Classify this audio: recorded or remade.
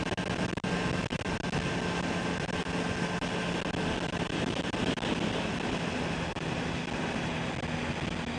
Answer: recorded